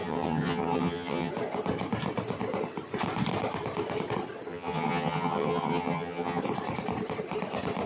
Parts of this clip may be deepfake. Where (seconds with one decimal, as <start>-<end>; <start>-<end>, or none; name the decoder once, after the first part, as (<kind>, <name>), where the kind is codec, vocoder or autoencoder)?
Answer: 0.0-1.3 (vocoder, HiFi-GAN); 4.5-6.4